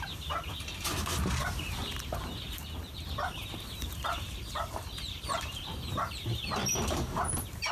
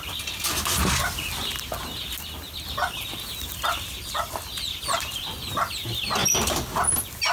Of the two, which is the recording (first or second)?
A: second